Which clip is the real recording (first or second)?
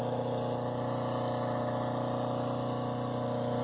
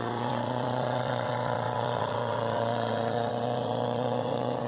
first